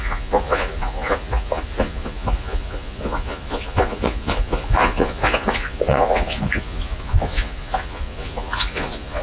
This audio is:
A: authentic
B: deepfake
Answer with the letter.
B